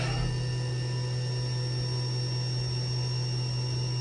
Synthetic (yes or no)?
no